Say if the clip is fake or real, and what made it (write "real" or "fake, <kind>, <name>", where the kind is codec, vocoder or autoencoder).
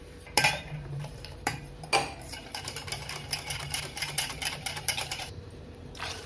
fake, vocoder, BigVGAN v2